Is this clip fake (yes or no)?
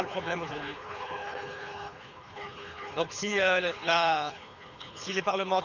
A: yes